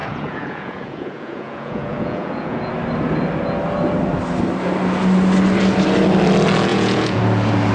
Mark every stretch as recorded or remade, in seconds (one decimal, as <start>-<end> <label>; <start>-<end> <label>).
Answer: 0.0-2.7 remade; 2.7-6.7 recorded; 6.7-7.2 remade; 7.2-7.7 recorded